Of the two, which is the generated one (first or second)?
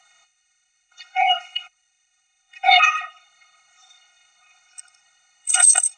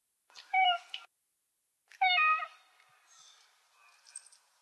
first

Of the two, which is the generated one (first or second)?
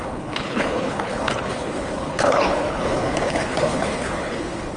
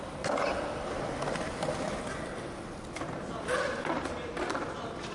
first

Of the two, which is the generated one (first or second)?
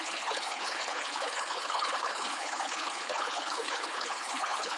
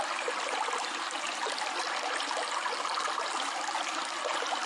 first